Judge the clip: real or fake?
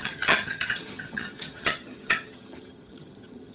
fake